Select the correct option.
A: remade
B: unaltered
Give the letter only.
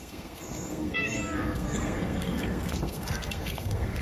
A